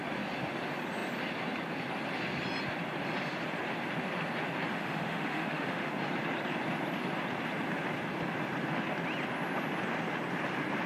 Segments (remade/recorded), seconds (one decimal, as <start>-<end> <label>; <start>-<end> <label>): 0.0-4.7 recorded; 4.7-5.9 remade; 5.9-10.9 recorded